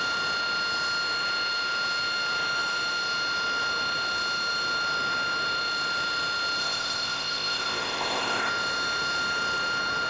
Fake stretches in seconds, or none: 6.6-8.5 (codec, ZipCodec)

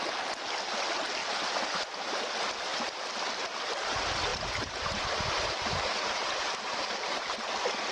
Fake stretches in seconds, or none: 4.3-7.5 (vocoder, BigVGAN v2)

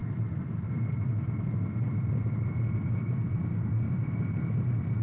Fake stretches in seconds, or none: none

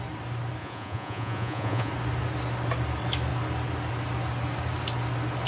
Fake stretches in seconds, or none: 0.6-1.9 (vocoder, Vocos)

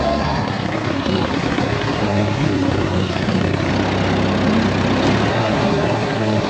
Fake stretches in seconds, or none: 0.0-3.7 (codec, SNAC); 5.3-6.5